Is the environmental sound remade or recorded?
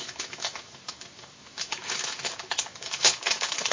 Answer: remade